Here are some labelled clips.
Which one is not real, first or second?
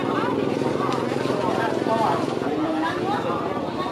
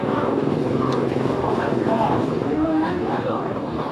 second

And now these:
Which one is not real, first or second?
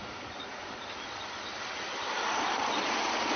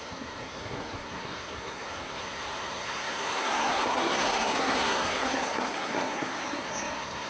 second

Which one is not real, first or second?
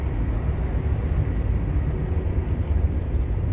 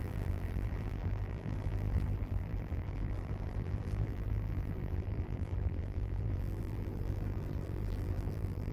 second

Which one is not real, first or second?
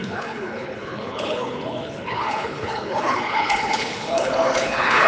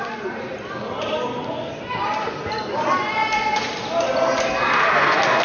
first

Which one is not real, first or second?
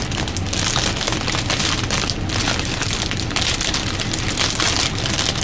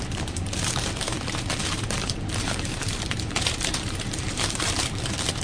second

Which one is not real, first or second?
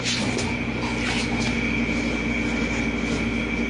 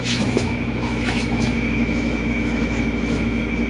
second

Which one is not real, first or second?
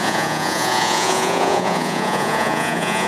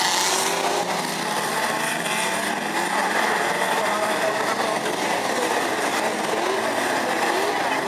first